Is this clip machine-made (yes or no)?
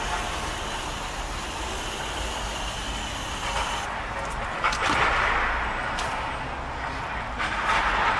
no